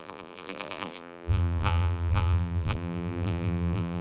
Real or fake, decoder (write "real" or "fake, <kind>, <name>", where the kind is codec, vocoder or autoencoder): fake, vocoder, BigVGAN v2